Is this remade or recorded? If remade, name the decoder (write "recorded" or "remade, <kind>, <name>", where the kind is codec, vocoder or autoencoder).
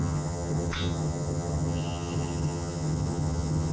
remade, vocoder, HiFi-GAN